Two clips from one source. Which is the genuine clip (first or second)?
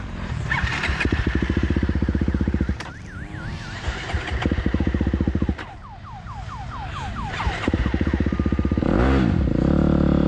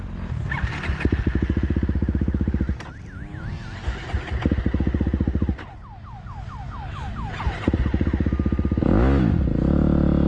second